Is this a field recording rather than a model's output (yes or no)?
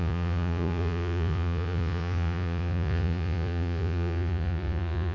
no